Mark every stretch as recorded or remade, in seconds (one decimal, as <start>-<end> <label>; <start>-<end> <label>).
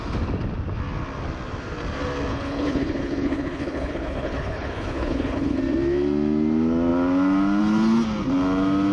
0.0-2.3 recorded; 2.3-5.6 remade; 5.6-8.9 recorded